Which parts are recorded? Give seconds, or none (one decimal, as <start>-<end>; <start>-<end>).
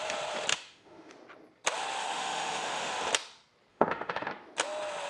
0.0-0.5; 1.1-2.0; 2.9-3.7; 4.3-5.1